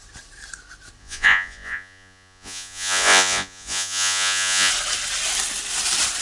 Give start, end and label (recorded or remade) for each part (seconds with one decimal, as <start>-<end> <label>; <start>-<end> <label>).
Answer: 0.0-1.0 recorded; 1.0-4.7 remade; 4.7-6.2 recorded